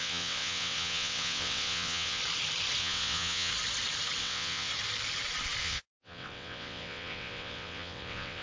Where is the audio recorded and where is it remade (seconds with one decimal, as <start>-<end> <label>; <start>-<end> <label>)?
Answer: 0.0-2.2 remade; 2.2-2.8 recorded; 2.8-3.5 remade; 3.5-4.2 recorded; 4.2-4.7 remade; 4.7-5.6 recorded; 5.6-8.4 remade